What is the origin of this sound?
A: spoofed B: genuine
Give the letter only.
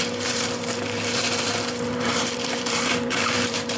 A